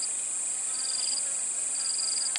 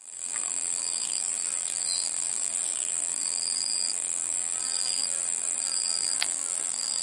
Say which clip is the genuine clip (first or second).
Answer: first